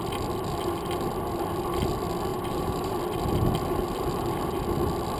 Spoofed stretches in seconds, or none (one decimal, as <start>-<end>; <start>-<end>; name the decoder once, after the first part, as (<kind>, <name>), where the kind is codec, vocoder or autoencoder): 2.3-2.9 (vocoder, BigVGAN v2)